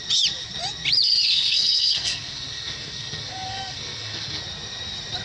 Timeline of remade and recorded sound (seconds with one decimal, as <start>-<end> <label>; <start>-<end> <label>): 0.0-1.3 recorded; 1.3-4.4 remade; 4.4-5.2 recorded